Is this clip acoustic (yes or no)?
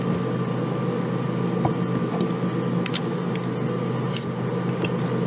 yes